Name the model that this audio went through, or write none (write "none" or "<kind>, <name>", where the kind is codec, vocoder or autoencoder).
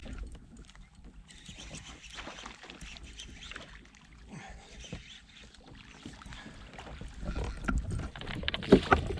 none